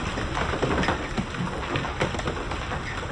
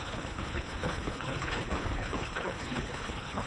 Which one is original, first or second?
first